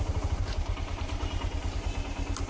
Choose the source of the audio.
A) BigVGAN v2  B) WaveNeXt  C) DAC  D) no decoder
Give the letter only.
A